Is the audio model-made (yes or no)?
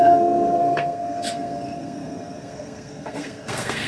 yes